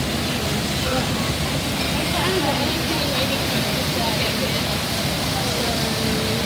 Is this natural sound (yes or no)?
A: yes